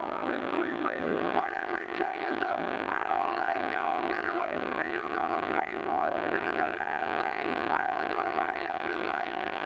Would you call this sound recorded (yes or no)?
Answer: no